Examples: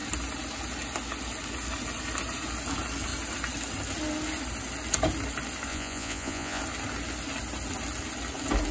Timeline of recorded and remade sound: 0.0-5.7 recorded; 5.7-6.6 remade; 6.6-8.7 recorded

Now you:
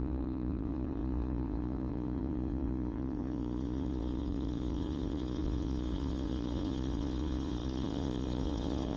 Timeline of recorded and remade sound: 0.0-9.0 remade

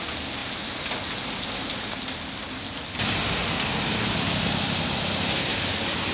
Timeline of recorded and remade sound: 0.0-6.1 recorded

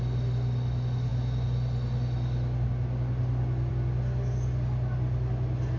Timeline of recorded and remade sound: 0.0-5.8 recorded